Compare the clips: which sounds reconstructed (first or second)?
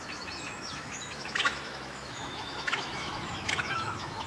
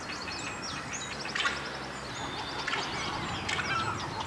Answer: first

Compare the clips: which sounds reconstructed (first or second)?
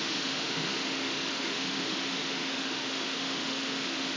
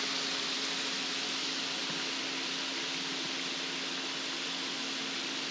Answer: first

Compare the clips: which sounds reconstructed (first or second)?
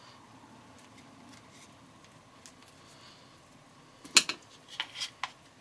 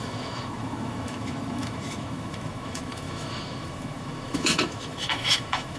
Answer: second